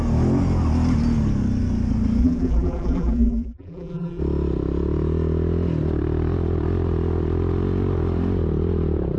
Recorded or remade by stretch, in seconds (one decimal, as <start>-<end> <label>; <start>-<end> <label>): 0.0-2.2 recorded; 2.2-4.2 remade; 4.2-9.2 recorded